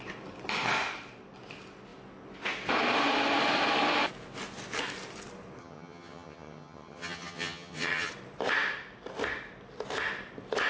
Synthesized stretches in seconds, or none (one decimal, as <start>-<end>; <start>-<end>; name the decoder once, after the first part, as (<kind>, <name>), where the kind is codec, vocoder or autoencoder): 5.6-8.1 (vocoder, HiFi-GAN)